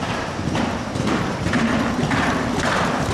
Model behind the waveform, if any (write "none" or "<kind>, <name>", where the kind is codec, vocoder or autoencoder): vocoder, BigVGAN v2